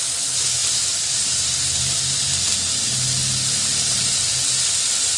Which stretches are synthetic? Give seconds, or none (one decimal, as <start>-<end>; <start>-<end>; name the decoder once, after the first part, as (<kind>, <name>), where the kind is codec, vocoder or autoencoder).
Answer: none